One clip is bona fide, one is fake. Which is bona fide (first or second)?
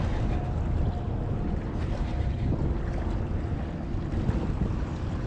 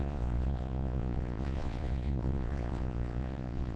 first